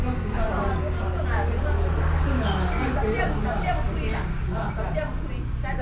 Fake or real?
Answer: real